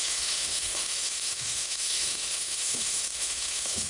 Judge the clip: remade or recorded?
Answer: remade